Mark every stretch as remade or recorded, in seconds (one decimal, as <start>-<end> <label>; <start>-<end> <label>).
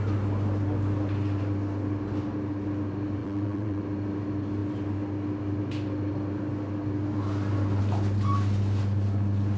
0.0-3.2 recorded; 3.2-3.8 remade; 3.8-9.6 recorded